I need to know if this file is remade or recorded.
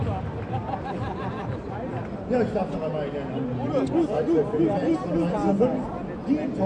recorded